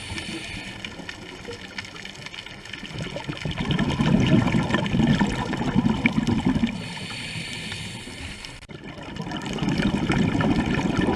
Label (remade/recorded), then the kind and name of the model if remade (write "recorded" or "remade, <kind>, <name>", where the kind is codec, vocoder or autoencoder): recorded